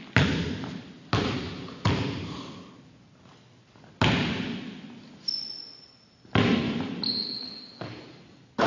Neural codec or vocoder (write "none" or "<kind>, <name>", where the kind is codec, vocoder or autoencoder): none